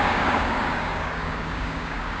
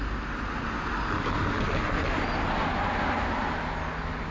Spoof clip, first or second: first